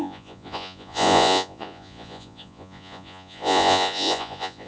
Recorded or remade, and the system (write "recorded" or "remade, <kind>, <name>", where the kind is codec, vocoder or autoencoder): remade, vocoder, Vocos